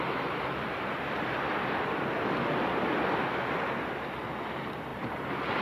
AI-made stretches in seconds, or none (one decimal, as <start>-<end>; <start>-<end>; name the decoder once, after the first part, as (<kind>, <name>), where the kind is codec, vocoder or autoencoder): 4.9-5.6 (vocoder, BigVGAN v2)